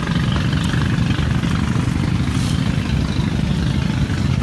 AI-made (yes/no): no